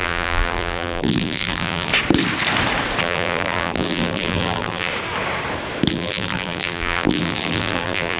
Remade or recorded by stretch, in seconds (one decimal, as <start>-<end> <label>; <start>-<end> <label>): 0.0-1.9 remade; 1.9-3.0 recorded; 3.0-4.9 remade; 4.9-5.9 recorded; 5.9-8.2 remade